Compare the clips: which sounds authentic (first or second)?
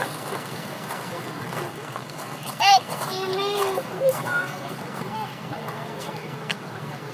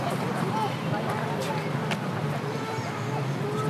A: second